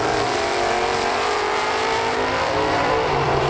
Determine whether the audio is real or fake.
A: fake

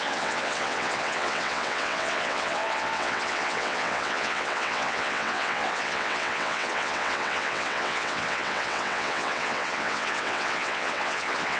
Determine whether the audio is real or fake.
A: fake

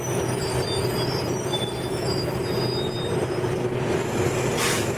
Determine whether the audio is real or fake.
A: fake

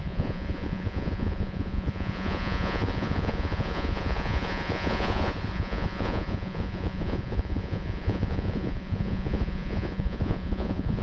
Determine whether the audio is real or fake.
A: fake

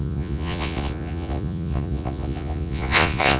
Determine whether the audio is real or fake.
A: fake